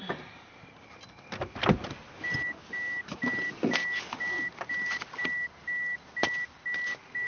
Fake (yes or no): no